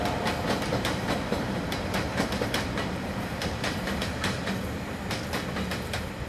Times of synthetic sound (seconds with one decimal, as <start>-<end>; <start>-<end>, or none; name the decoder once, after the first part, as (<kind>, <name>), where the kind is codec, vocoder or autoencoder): 0.7-4.5 (vocoder, BigVGAN v2)